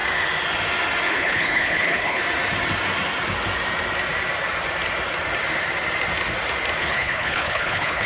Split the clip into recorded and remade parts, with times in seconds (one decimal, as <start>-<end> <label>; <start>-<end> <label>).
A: 0.0-1.1 recorded; 1.1-2.2 remade; 2.2-6.8 recorded; 6.8-8.1 remade